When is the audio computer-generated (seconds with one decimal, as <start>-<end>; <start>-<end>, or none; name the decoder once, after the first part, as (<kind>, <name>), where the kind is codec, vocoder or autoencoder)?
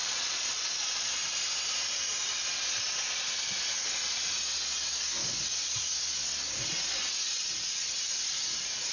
0.0-1.1 (vocoder, Vocos)